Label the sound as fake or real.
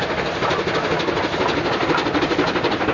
real